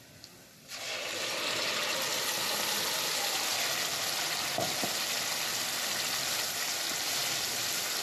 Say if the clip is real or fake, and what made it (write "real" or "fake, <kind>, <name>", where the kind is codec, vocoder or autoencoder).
real